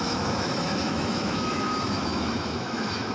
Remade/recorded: remade